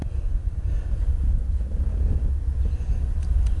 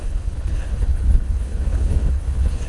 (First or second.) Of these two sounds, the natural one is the first